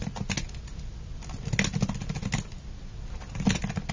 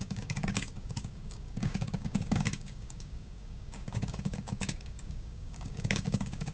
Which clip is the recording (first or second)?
first